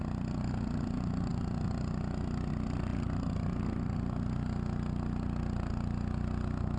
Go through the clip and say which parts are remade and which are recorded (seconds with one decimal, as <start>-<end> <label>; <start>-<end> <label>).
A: 0.0-6.8 recorded